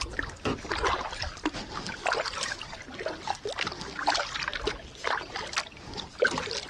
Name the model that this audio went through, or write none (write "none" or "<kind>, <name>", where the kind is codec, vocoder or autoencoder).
none